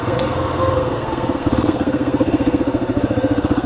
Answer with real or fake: fake